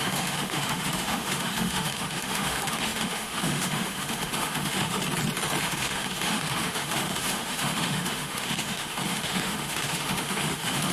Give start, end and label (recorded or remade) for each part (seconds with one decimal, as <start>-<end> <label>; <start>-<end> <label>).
0.0-5.0 remade; 5.0-5.6 recorded; 5.6-10.9 remade